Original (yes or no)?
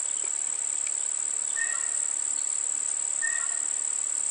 yes